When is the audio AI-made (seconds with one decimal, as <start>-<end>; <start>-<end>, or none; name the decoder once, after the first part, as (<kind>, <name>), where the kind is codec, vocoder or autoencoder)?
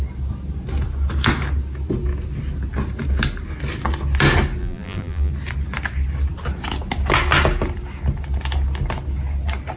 4.6-5.3 (vocoder, BigVGAN v2)